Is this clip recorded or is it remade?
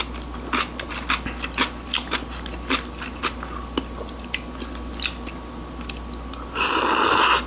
recorded